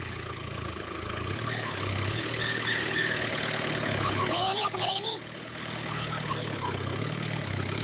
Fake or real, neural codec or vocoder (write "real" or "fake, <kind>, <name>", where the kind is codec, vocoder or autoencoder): fake, codec, HILCodec